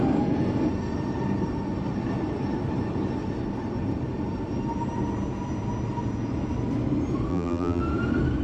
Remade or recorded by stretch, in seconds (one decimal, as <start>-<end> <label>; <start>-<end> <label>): 0.0-7.3 recorded; 7.3-7.8 remade; 7.8-8.4 recorded